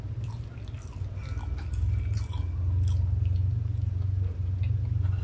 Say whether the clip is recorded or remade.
recorded